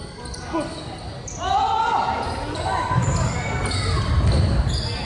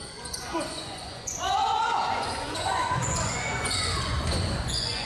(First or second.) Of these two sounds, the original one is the first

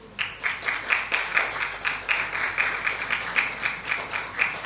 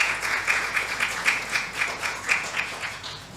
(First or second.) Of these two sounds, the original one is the first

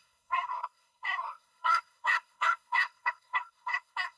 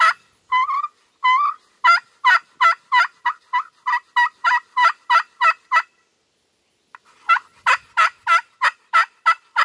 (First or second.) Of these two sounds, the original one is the second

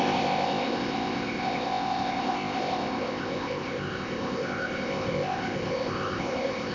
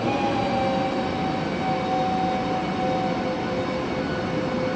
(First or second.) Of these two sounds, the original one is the second